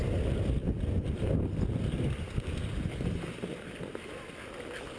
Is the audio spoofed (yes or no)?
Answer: no